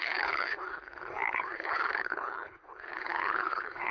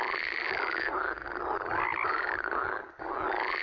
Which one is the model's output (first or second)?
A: first